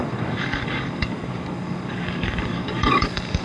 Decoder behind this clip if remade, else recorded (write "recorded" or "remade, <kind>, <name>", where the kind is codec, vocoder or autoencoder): remade, codec, DAC